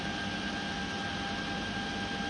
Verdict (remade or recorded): recorded